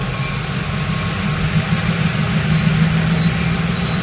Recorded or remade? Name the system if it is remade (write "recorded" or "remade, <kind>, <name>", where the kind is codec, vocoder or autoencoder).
recorded